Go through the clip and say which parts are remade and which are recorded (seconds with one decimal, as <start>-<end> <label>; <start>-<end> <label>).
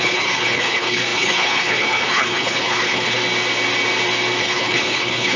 0.0-3.2 remade; 3.2-4.4 recorded; 4.4-5.4 remade